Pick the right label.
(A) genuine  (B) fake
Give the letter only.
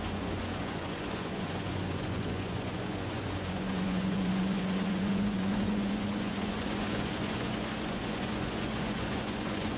B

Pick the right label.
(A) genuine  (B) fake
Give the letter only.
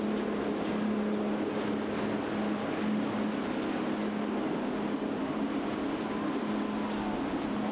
A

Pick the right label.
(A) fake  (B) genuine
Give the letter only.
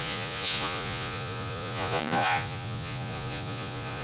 A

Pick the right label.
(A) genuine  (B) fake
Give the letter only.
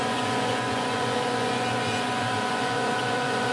B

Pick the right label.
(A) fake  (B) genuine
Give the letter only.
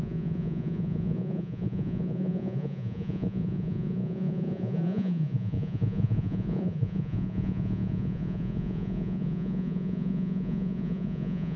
A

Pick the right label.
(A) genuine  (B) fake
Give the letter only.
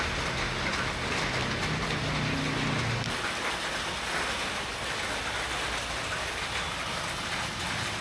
A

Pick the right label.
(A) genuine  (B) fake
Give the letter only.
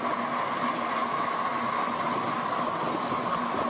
A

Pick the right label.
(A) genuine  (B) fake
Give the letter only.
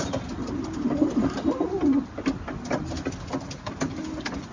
A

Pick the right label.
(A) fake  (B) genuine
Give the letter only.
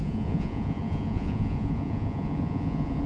A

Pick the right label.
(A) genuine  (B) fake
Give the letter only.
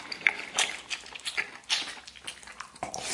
A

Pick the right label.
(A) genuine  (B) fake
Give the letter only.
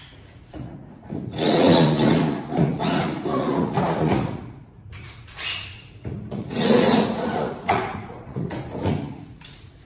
B